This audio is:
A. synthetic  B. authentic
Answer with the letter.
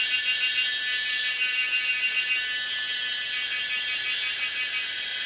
B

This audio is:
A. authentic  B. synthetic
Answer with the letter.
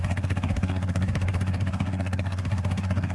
B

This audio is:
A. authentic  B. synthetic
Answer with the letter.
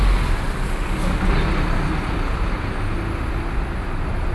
A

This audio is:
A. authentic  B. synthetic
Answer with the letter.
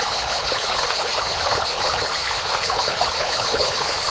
B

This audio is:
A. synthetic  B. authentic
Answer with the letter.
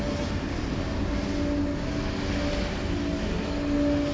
B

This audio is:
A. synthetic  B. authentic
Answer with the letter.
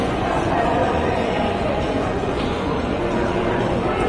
A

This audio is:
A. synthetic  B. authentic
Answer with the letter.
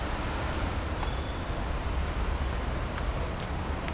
A